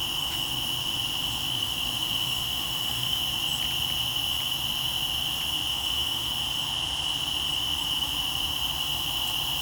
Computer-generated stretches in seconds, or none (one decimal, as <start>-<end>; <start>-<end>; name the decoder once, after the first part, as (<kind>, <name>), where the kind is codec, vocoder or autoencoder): 1.5-3.2 (autoencoder, DAC-VAE); 5.7-6.3